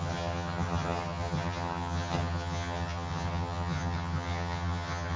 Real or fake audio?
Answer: fake